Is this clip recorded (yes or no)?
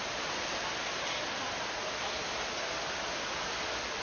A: yes